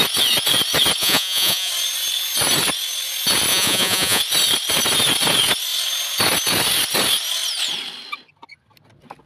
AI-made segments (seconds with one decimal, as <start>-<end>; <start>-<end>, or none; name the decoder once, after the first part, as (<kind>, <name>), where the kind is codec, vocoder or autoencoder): 1.0-1.7 (vocoder, Vocos); 3.5-4.2